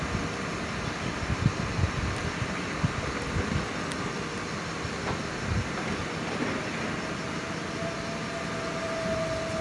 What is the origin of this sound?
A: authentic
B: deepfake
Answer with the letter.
A